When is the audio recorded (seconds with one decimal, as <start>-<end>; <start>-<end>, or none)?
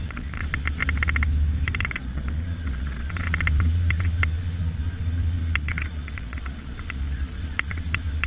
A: 0.8-1.8